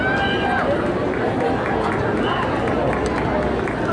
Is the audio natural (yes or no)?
yes